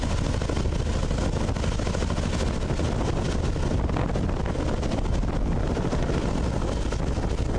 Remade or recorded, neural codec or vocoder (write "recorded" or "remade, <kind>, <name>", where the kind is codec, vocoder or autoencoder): recorded